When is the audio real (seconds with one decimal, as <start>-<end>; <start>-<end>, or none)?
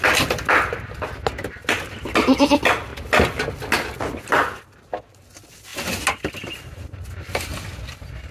0.0-8.3